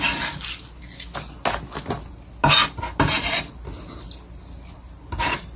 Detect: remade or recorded recorded